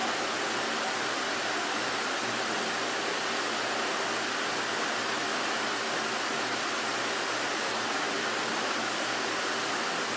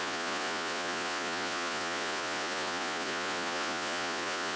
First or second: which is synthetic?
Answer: second